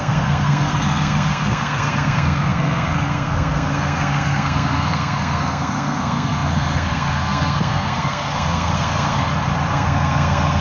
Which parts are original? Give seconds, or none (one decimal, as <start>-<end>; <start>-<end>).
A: 9.2-9.7